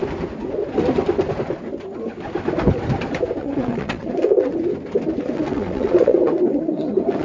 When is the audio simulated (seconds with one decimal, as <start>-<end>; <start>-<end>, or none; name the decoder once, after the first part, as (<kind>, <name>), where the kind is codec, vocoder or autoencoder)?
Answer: 3.4-4.6 (vocoder, WaveNeXt); 5.2-7.2